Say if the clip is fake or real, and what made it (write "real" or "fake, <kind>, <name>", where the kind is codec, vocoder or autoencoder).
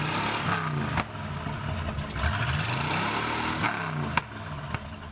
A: real